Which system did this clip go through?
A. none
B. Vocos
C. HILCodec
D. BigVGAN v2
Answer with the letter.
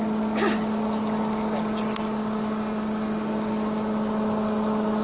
A